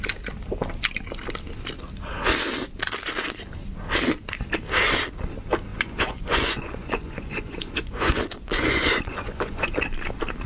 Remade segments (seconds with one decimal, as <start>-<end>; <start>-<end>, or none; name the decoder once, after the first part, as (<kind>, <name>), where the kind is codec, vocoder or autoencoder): 5.7-9.7 (vocoder, Vocos)